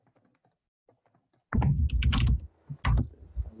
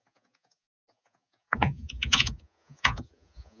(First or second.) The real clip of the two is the first